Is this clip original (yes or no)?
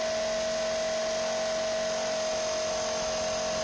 yes